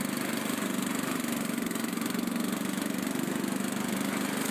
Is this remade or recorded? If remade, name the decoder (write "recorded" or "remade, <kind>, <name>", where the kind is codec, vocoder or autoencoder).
recorded